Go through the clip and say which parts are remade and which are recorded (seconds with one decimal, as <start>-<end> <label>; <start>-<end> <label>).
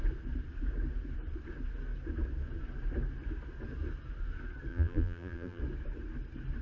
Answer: 0.0-4.7 recorded; 4.7-5.6 remade; 5.6-6.6 recorded